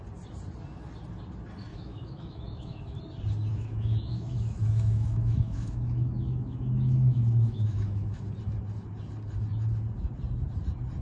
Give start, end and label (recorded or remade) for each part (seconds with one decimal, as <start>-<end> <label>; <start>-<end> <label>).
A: 0.0-1.7 recorded; 1.7-3.0 remade; 3.0-3.5 recorded; 3.5-8.2 remade; 8.2-11.0 recorded